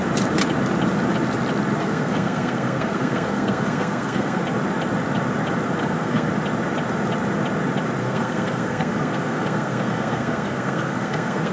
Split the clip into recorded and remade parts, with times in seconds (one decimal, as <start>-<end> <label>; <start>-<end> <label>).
0.0-1.8 recorded; 1.8-4.4 remade; 4.4-5.8 recorded; 5.8-6.3 remade; 6.3-8.0 recorded; 8.0-11.5 remade